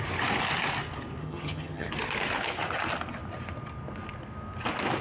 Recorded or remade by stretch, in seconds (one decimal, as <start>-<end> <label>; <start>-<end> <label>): 0.0-1.2 recorded; 1.2-1.9 remade; 1.9-5.0 recorded